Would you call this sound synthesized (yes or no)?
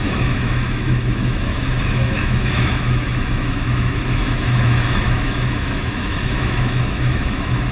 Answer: yes